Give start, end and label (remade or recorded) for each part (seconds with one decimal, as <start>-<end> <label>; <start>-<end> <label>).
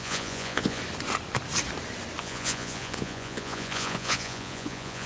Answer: 0.0-0.8 remade; 0.8-2.2 recorded; 2.2-5.1 remade